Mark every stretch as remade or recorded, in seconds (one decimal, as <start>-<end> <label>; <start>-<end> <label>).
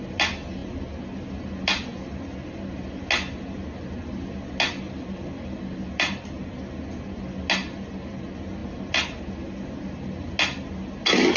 0.0-11.4 recorded